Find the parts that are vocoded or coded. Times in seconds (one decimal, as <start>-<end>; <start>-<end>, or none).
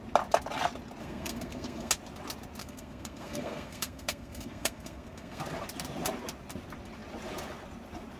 1.0-1.9; 2.6-5.4